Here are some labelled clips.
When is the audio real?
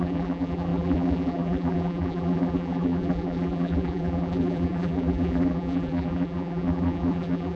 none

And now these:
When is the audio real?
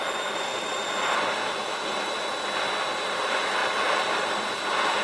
1.6-3.1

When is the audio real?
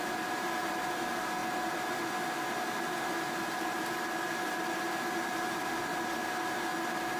0.0-7.2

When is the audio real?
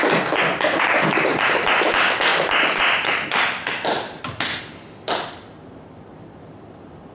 0.0-2.3; 2.8-7.1